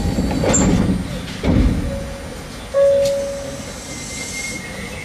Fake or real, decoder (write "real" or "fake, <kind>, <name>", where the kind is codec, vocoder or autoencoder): real